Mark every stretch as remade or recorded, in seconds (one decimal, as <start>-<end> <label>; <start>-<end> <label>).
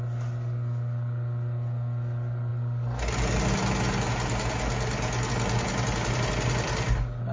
0.0-7.3 recorded